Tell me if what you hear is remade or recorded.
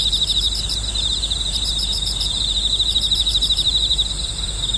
remade